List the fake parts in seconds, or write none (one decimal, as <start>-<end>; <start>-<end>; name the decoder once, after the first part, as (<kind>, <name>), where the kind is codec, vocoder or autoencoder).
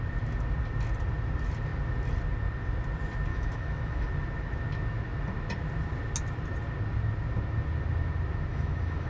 3.3-4.1 (autoencoder, DAC-VAE); 8.5-9.1